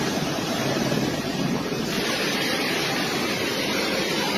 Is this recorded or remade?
remade